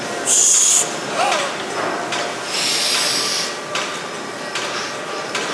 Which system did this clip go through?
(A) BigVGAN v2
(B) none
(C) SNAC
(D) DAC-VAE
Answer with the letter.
B